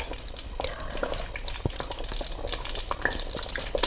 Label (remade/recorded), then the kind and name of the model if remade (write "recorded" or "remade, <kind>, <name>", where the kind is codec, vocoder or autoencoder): recorded